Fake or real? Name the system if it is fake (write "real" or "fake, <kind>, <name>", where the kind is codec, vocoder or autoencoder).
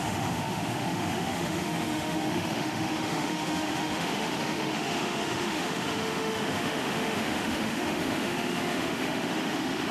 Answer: fake, autoencoder, DAC-VAE